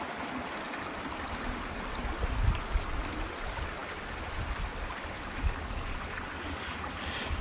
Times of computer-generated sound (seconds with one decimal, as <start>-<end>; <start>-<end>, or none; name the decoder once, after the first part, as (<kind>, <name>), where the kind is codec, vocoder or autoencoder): none